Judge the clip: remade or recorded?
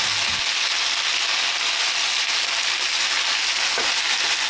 recorded